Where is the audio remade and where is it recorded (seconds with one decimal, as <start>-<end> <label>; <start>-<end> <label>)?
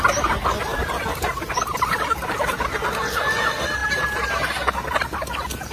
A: 0.0-0.7 recorded; 0.7-2.2 remade; 2.2-5.7 recorded